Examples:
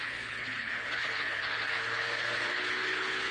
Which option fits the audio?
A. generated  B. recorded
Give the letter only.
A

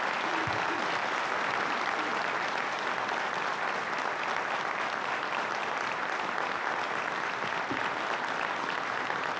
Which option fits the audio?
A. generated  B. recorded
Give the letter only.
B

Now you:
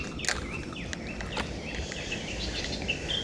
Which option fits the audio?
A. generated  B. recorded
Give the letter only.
B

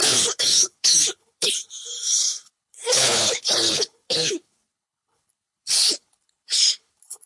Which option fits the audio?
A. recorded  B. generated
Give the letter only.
B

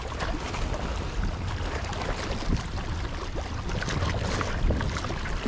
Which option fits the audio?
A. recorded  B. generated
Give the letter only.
A